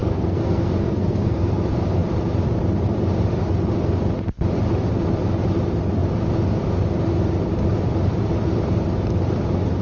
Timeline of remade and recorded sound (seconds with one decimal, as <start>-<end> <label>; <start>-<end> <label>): 0.0-1.6 remade; 1.6-9.8 recorded